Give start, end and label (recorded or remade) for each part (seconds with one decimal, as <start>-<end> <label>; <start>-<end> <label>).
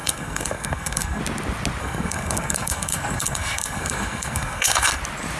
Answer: 0.0-1.2 remade; 1.2-1.8 recorded; 1.8-5.0 remade; 5.0-5.4 recorded